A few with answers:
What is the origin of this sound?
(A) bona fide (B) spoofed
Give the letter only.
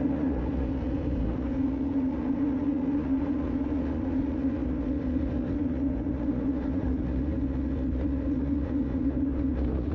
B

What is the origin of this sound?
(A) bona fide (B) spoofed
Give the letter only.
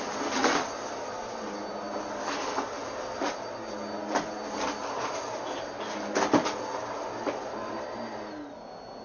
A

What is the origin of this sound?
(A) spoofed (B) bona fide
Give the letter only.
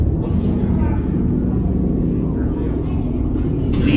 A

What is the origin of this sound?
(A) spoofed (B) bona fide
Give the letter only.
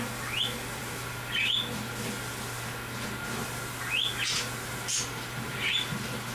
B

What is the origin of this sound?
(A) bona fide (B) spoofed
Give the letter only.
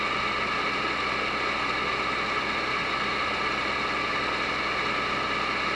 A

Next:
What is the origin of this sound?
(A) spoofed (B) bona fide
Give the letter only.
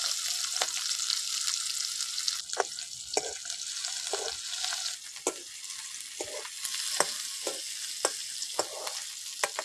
B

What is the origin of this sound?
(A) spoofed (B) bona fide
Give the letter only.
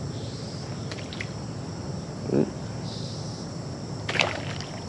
B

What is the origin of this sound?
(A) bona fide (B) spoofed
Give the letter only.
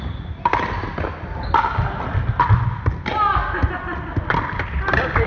A